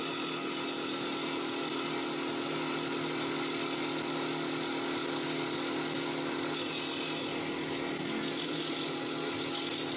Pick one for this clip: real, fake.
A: real